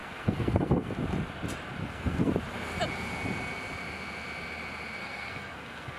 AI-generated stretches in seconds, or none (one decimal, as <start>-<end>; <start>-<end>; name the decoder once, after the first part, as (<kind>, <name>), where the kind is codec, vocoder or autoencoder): 0.0-0.9 (codec, SNAC); 1.8-2.3; 5.0-6.0